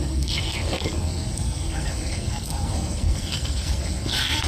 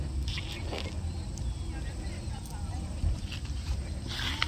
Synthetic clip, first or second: first